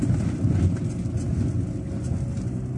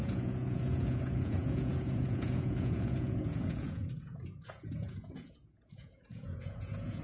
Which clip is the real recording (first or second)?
first